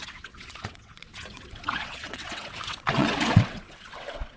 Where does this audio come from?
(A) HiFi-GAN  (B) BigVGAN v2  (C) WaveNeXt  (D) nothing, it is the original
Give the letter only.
C